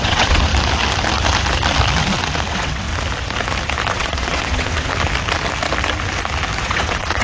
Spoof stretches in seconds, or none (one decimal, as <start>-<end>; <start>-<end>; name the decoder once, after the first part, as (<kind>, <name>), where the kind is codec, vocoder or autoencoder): 0.0-0.5 (vocoder, WaveNeXt); 2.5-2.9; 3.9-4.9; 6.6-7.2